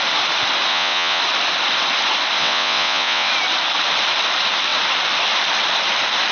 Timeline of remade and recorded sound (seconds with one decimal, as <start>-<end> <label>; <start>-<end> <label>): 0.0-0.7 recorded; 0.7-1.2 remade; 1.2-2.4 recorded; 2.4-3.3 remade; 3.3-6.3 recorded